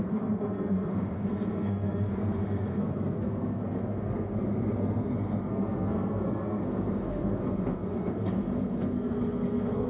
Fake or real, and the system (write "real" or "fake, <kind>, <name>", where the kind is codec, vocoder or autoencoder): fake, codec, SNAC